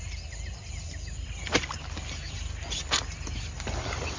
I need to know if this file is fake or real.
real